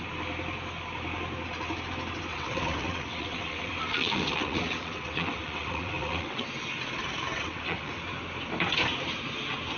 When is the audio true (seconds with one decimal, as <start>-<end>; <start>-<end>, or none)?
0.0-2.3; 6.5-7.3; 7.9-9.8